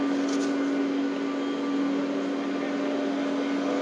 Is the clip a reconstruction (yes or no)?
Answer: no